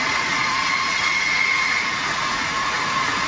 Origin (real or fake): fake